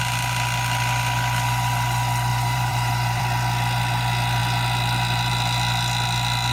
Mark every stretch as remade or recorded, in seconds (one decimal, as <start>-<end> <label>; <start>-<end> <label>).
0.0-2.3 recorded; 2.3-3.2 remade; 3.2-6.5 recorded